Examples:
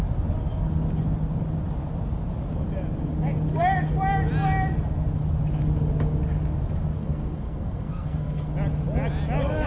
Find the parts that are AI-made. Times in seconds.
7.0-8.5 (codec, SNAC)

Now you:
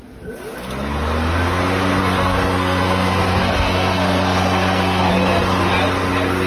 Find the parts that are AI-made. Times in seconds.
2.0-5.1 (codec, SNAC)